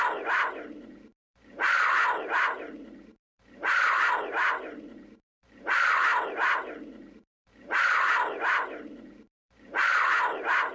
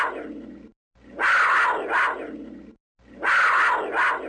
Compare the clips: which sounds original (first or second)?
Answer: second